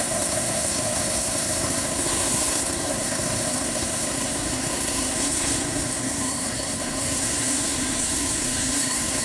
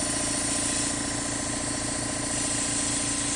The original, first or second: second